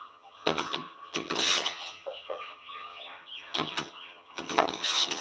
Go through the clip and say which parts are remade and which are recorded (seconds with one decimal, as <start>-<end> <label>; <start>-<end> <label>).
0.0-5.2 remade